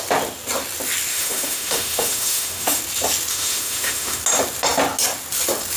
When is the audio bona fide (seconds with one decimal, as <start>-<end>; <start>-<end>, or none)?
0.0-1.1; 2.8-3.3; 4.2-5.8